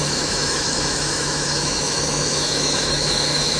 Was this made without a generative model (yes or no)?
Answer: no